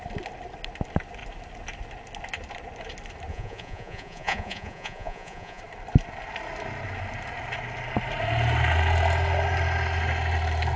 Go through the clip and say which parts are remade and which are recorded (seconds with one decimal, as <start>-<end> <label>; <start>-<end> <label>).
0.0-3.3 recorded; 3.3-5.6 remade; 5.6-10.8 recorded